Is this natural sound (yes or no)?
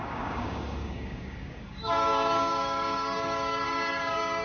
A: no